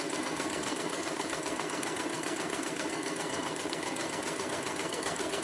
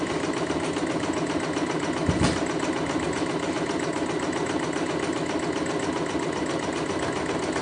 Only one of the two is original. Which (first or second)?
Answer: second